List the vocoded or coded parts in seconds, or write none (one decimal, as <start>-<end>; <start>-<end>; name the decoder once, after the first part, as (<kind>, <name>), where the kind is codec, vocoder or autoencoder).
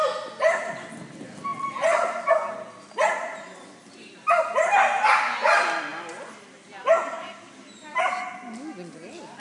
none